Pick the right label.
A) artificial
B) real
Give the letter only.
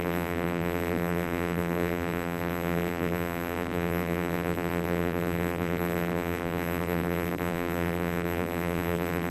A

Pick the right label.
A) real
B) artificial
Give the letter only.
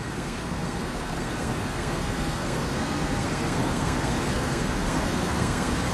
B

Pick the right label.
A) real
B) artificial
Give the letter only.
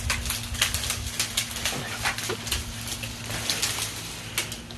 A